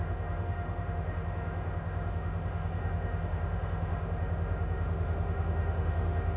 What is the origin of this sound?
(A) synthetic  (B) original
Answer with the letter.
A